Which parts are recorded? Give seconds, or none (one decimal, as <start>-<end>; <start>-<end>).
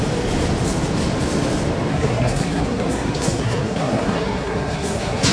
0.0-1.9